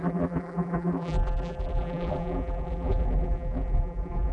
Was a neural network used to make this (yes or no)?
yes